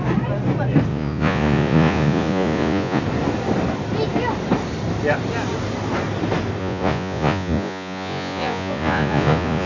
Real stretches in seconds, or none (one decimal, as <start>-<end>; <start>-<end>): 0.0-0.9; 3.0-6.6